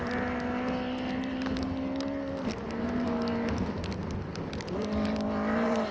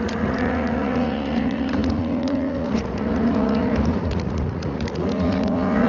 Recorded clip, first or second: first